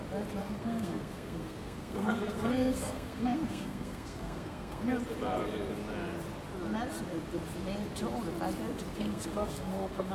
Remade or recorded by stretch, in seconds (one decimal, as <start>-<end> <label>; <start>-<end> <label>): 0.0-0.4 recorded; 0.4-4.9 remade; 4.9-8.9 recorded; 8.9-10.1 remade